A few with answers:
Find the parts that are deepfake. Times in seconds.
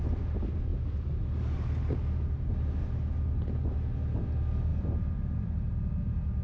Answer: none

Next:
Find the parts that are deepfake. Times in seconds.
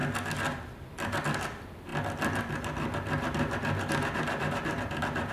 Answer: none